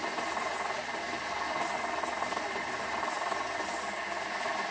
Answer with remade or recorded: recorded